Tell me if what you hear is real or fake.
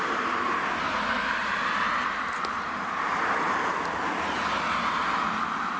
real